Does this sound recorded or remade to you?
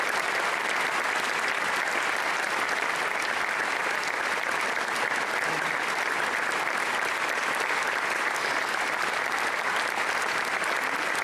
recorded